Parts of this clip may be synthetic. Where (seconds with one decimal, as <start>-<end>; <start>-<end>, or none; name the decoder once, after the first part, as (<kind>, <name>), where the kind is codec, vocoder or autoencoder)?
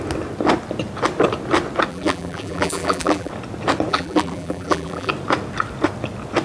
1.9-3.3 (vocoder, BigVGAN v2); 3.9-5.1